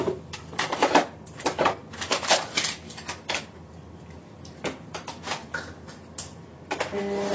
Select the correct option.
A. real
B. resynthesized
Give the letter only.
A